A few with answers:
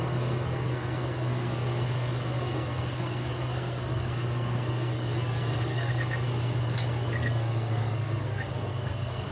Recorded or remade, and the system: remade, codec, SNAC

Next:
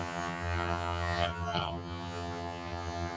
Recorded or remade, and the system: remade, vocoder, HiFi-GAN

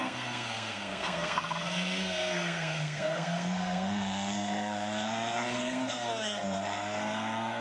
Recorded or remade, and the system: remade, codec, SNAC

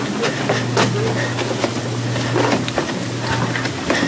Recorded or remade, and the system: recorded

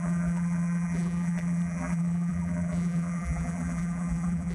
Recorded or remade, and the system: remade, vocoder, BigVGAN v2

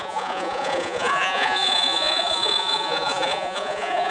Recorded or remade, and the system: remade, vocoder, Vocos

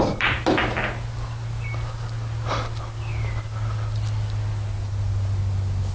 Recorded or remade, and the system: recorded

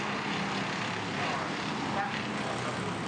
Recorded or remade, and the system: recorded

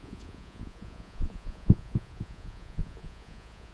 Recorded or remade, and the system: remade, vocoder, Vocos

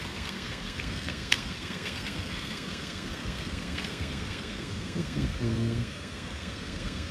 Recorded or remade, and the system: remade, codec, SNAC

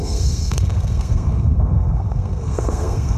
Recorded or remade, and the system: remade, codec, SNAC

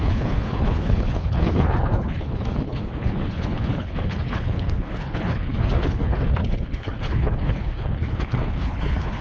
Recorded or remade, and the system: remade, codec, HILCodec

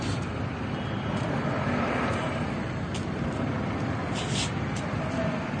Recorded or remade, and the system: recorded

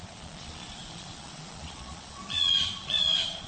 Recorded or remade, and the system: remade, vocoder, Vocos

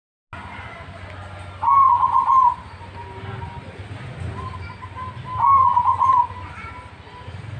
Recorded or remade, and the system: recorded